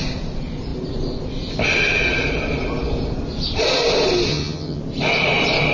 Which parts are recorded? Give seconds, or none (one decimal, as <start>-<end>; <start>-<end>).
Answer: 0.0-4.3; 4.8-5.7